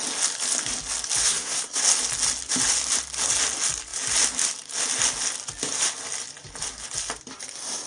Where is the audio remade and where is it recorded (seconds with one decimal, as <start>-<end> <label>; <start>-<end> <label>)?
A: 0.0-1.2 recorded; 1.2-1.8 remade; 1.8-7.9 recorded